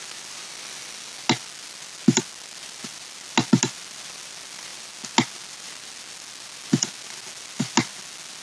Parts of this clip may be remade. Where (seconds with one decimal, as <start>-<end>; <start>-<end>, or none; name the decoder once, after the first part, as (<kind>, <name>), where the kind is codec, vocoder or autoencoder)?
none